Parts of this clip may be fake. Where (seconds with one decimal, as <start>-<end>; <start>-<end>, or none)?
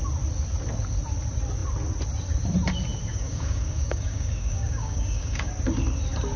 3.1-5.5